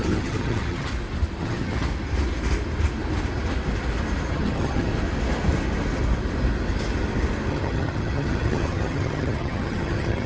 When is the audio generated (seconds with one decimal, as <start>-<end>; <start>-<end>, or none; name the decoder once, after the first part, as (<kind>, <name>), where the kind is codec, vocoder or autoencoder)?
0.0-0.9 (vocoder, HiFi-GAN); 1.4-1.9; 4.3-4.9; 7.5-10.3